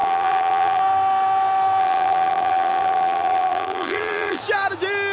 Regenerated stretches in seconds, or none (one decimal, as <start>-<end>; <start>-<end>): 0.0-0.8; 1.8-4.4